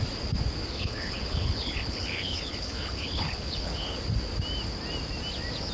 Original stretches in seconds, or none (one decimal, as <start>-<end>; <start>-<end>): 0.0-0.6; 4.0-5.7